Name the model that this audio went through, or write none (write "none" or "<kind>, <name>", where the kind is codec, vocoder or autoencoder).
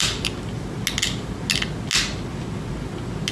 none